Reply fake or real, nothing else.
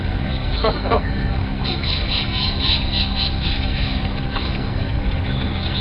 fake